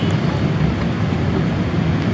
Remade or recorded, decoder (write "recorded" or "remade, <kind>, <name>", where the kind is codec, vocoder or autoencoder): recorded